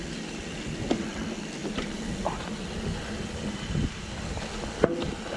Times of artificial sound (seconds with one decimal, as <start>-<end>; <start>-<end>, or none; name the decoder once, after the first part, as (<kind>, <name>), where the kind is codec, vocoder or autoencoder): none